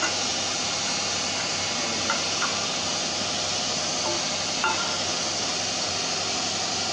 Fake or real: real